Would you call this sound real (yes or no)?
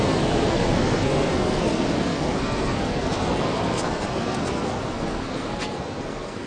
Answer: no